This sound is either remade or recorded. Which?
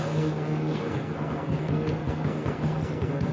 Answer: remade